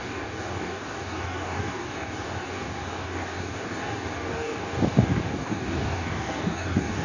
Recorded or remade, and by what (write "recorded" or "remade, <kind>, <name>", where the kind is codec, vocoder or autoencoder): remade, codec, DAC